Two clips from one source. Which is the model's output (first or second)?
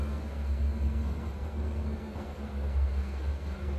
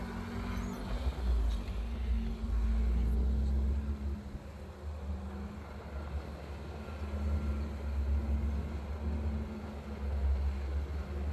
first